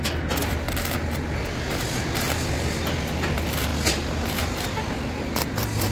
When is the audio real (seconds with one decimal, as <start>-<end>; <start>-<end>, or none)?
0.0-5.9